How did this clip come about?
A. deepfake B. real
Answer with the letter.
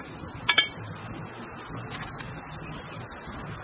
B